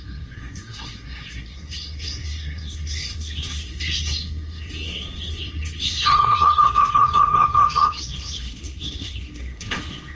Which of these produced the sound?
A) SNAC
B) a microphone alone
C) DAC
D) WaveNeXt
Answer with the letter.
A